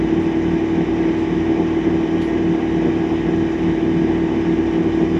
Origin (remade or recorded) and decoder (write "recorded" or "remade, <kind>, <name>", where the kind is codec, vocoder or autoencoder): recorded